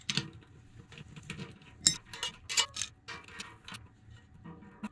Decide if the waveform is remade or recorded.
recorded